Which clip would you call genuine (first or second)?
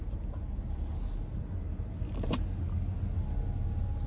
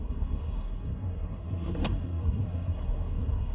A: first